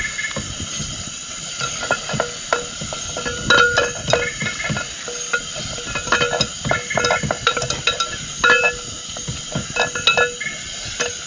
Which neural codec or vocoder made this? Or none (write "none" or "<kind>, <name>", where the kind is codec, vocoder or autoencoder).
none